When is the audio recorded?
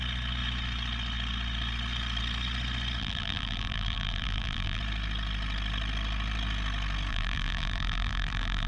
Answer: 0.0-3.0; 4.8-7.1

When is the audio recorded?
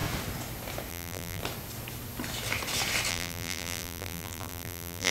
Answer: 0.0-0.9; 1.4-3.1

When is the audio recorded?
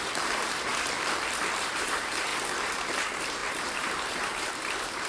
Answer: 0.7-1.6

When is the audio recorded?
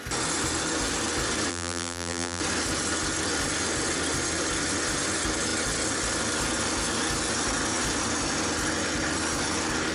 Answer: 0.0-1.5; 2.4-9.9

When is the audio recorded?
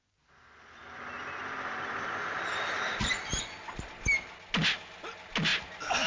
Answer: 0.0-6.1